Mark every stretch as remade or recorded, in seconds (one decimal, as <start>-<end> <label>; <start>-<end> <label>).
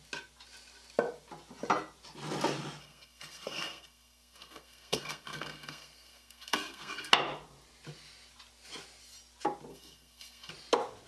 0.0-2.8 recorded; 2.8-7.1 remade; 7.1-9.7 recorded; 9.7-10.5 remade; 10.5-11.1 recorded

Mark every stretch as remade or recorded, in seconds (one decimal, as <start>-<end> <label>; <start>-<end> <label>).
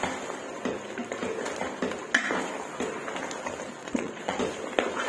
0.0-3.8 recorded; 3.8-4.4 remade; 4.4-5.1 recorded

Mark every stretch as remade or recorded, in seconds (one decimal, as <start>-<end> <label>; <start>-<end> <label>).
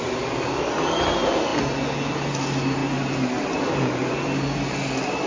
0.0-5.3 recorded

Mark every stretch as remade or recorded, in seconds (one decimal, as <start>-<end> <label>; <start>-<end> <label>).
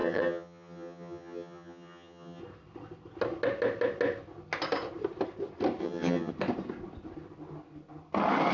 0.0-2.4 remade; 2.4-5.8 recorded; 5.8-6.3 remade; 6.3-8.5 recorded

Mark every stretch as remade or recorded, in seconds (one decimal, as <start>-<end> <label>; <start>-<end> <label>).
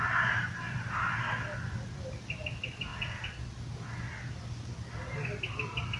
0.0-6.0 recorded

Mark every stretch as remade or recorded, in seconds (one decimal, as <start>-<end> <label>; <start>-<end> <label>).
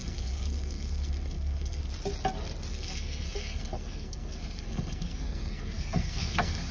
0.0-1.8 remade; 1.8-2.7 recorded; 2.7-6.7 remade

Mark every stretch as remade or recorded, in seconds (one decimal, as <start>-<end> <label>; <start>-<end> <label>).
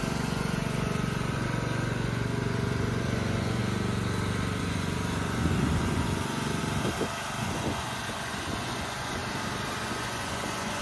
0.0-3.6 remade; 3.6-4.6 recorded; 4.6-6.6 remade; 6.6-7.4 recorded; 7.4-9.2 remade; 9.2-9.8 recorded; 9.8-10.8 remade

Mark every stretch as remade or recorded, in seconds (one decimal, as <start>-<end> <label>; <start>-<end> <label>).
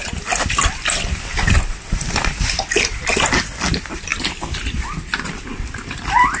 0.0-6.4 recorded